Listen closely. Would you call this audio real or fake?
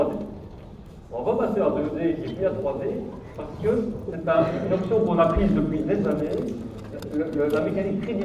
real